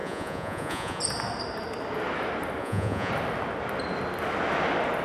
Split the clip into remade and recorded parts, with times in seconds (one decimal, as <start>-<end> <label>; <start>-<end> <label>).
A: 0.0-1.0 remade; 1.0-2.6 recorded; 2.6-3.1 remade; 3.1-5.0 recorded

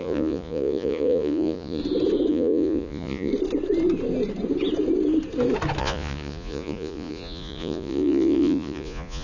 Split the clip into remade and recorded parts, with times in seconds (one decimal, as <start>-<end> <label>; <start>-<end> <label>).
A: 0.0-1.8 remade; 1.8-2.3 recorded; 2.3-3.3 remade; 3.3-5.8 recorded; 5.8-9.2 remade

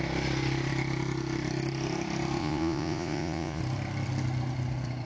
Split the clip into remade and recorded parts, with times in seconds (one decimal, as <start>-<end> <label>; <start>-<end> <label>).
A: 0.0-2.4 recorded; 2.4-3.6 remade; 3.6-5.0 recorded

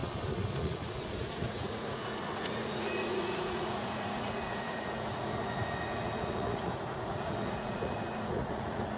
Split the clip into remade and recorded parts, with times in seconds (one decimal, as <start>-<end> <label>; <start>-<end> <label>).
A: 0.0-0.6 recorded; 0.6-9.0 remade